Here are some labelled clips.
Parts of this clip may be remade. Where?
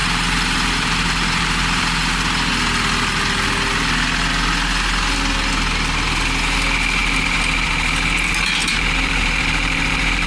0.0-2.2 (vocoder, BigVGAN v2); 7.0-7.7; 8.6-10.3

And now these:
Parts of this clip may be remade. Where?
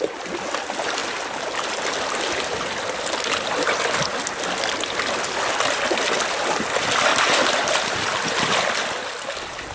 none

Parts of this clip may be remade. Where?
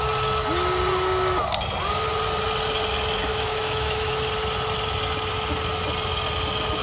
3.3-4.1 (autoencoder, DAC-VAE)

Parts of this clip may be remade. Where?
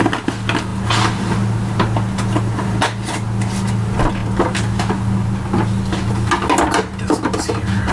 none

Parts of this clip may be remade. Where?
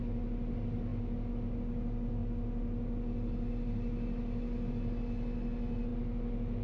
none